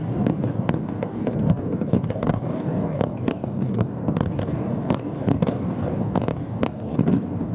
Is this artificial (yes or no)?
yes